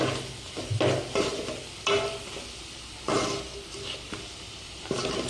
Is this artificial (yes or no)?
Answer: no